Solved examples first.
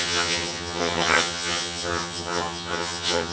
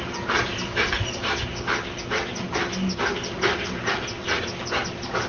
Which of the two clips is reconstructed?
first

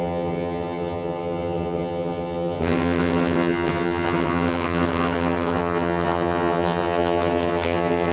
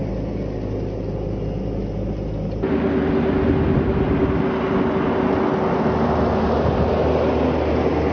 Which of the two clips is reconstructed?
first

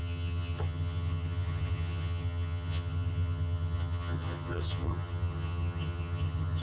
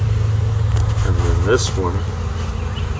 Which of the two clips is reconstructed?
first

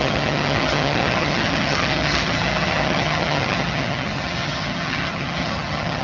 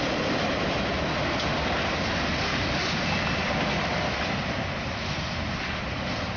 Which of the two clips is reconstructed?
first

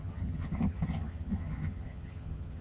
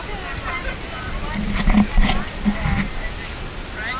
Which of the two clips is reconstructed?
first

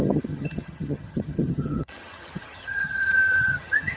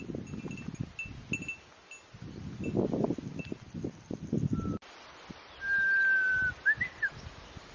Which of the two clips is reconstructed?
first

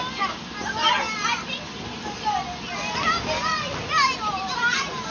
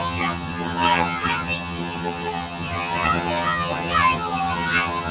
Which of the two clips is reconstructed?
second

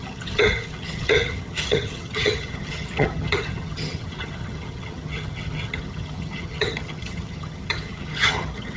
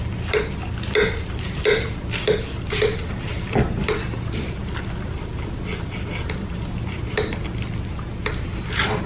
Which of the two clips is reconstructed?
first